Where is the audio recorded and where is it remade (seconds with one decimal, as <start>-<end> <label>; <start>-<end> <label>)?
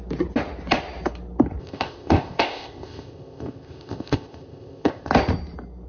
0.0-1.6 recorded; 1.6-5.1 remade; 5.1-5.9 recorded